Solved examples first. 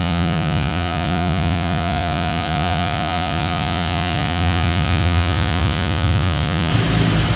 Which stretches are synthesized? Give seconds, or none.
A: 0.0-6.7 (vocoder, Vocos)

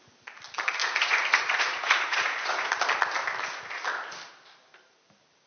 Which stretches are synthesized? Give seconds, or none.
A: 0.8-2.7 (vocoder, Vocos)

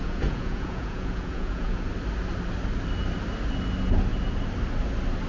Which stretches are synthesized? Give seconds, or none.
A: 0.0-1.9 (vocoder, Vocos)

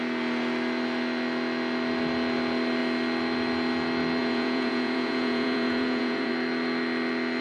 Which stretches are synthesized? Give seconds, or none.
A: 4.2-6.3 (vocoder, Vocos)

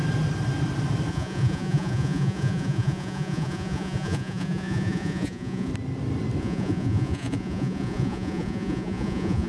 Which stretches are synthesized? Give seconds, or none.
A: 1.1-5.7 (vocoder, Vocos); 6.4-9.5